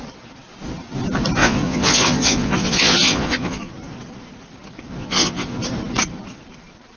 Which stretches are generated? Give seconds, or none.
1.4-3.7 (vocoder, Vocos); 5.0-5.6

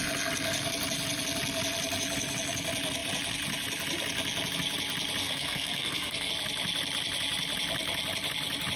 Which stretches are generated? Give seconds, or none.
5.2-6.3 (codec, SNAC)

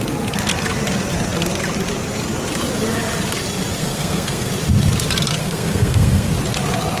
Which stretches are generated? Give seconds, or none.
3.8-4.5 (codec, SNAC); 5.4-6.3

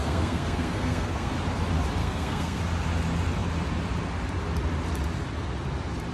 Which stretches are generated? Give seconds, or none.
0.0-1.3 (codec, SNAC); 2.0-2.6

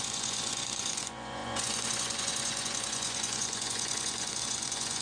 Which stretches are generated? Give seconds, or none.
0.0-5.0 (vocoder, Vocos)